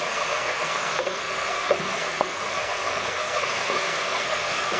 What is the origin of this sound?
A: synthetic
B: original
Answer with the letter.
A